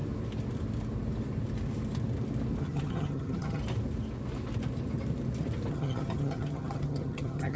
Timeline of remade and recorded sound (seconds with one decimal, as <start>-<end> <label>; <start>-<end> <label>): 0.0-2.6 recorded; 2.6-3.6 remade; 3.6-5.7 recorded; 5.7-7.6 remade